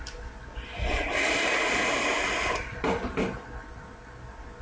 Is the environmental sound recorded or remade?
recorded